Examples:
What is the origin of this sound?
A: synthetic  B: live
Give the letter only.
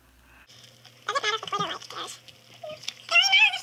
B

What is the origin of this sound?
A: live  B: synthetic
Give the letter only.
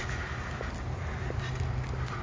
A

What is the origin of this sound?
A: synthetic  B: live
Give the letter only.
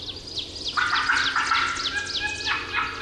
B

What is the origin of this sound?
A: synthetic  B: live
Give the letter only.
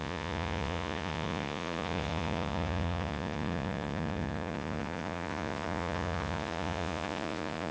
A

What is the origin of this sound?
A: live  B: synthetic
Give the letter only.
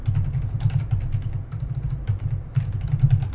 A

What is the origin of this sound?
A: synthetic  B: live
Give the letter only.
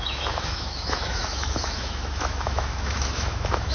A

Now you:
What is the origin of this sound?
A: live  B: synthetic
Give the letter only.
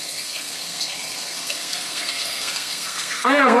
B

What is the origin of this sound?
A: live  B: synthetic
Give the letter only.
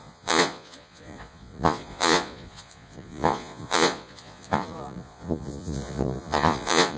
B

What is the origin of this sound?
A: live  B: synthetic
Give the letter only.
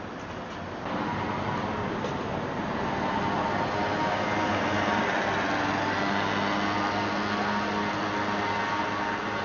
A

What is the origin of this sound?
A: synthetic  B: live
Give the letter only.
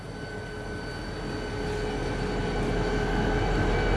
B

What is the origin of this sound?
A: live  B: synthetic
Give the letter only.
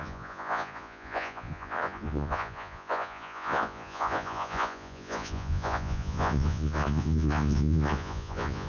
B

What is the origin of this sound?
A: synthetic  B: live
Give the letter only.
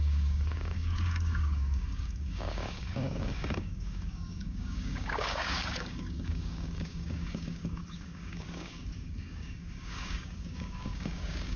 A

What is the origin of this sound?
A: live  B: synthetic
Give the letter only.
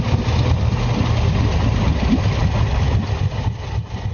A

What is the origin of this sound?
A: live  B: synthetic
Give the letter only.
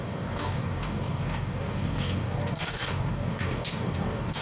B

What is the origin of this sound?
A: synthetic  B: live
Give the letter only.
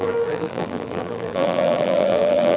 A